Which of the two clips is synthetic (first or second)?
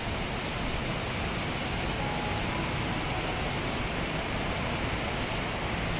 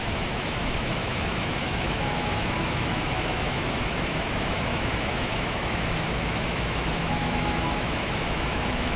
second